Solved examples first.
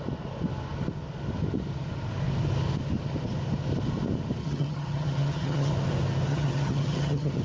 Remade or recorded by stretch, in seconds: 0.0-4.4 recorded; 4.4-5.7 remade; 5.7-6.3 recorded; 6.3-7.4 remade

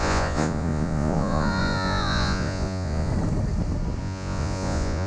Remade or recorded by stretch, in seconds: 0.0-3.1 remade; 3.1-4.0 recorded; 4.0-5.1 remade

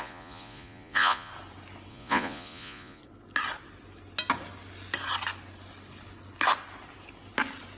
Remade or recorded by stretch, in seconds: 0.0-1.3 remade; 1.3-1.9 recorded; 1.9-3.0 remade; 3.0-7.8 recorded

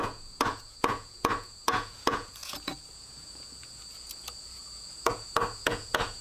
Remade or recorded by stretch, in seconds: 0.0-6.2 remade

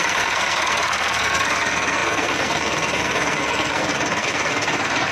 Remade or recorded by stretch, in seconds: 0.0-5.1 remade

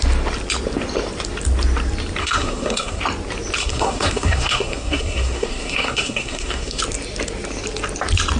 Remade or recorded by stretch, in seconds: 0.0-2.2 recorded; 2.2-3.0 remade; 3.0-3.6 recorded; 3.6-6.8 remade; 6.8-8.4 recorded

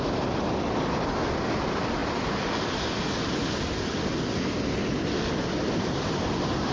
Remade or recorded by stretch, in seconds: 0.0-6.7 recorded